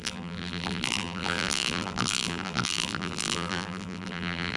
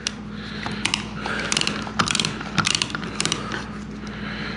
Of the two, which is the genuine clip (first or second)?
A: second